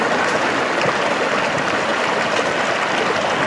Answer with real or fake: real